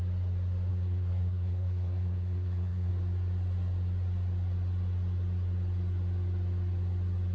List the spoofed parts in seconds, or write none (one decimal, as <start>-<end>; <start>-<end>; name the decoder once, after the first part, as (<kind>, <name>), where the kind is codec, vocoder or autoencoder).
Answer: 0.7-2.9 (codec, SNAC)